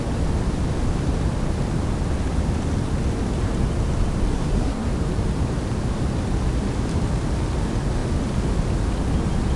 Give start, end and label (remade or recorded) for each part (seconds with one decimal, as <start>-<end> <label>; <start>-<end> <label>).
0.0-4.3 recorded; 4.3-4.9 remade; 4.9-9.6 recorded